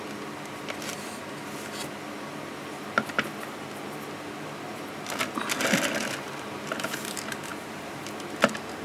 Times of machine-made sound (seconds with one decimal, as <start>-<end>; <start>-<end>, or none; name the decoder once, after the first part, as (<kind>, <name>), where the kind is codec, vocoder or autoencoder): 7.5-8.0 (vocoder, BigVGAN v2)